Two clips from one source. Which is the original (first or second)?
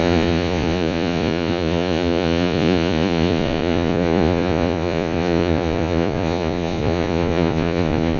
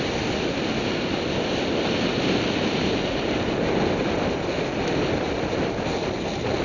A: second